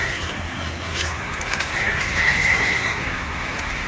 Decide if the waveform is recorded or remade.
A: remade